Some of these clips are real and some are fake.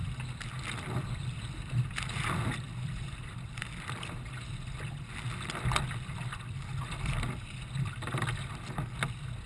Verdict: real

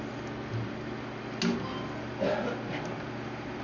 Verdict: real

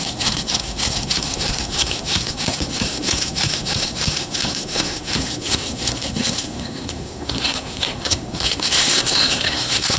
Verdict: fake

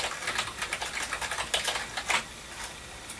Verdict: real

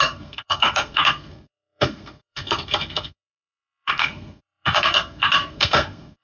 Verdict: fake